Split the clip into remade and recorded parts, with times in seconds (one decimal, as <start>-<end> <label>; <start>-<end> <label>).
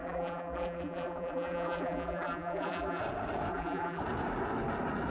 0.0-3.0 remade; 3.0-3.5 recorded; 3.5-4.0 remade; 4.0-5.1 recorded